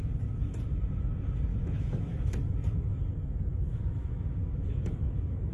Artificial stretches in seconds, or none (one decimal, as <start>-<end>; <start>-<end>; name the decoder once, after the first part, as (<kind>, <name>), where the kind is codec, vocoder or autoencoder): 1.5-2.9 (autoencoder, DAC-VAE); 3.5-5.5